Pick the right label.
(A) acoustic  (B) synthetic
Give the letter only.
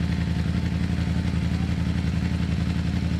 A